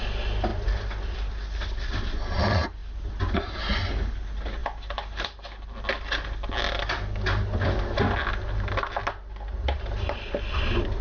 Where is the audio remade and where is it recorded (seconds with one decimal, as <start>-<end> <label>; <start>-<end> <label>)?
0.0-0.5 recorded; 0.5-2.0 remade; 2.0-11.0 recorded